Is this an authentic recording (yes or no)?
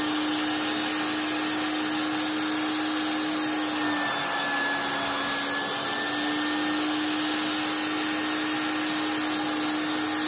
yes